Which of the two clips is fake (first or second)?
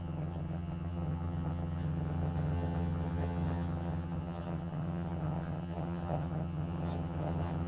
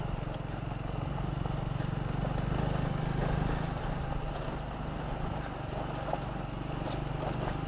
first